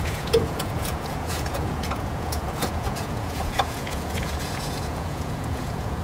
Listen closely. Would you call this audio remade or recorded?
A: remade